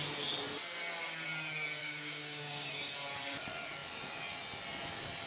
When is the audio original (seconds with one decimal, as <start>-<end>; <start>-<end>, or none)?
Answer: 0.0-1.8; 2.9-5.3